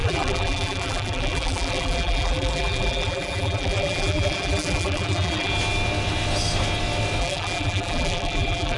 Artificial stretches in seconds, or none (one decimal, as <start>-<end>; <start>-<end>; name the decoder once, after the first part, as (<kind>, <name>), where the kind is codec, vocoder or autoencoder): 0.0-5.5 (vocoder, BigVGAN v2); 7.2-8.8